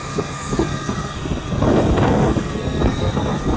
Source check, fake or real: fake